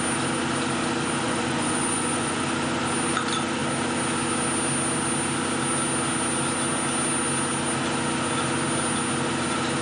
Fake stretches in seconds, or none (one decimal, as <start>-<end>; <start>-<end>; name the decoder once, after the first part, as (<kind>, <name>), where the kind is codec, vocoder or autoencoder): 1.2-2.5 (vocoder, Vocos)